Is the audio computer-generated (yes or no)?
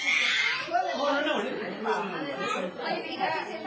no